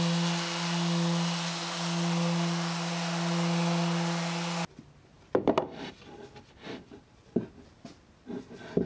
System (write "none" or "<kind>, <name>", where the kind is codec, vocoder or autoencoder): none